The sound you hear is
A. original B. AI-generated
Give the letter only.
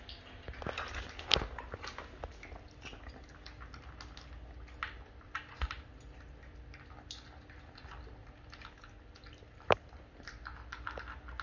A